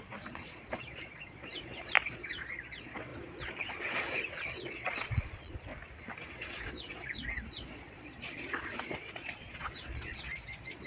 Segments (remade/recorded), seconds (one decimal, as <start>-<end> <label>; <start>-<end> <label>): 0.0-5.7 remade; 5.7-6.3 recorded; 6.3-10.9 remade